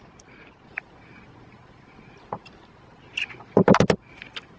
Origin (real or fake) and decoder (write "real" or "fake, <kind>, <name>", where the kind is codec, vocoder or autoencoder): fake, vocoder, BigVGAN v2